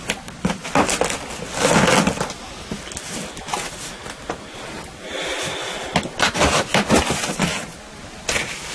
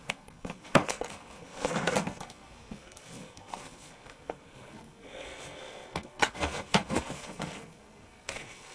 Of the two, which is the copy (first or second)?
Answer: second